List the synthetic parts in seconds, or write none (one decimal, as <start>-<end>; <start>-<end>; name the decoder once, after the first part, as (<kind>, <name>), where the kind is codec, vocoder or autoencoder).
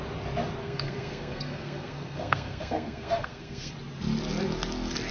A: 0.6-3.7 (codec, SNAC)